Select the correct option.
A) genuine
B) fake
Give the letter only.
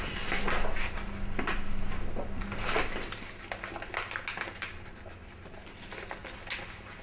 A